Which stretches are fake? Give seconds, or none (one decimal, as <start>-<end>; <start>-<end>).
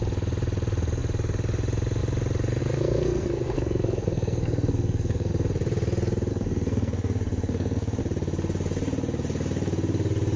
2.6-5.3; 6.3-8.0